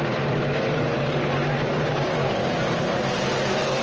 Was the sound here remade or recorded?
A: remade